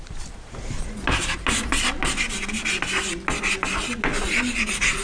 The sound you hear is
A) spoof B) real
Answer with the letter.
B